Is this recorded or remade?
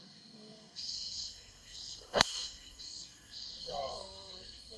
remade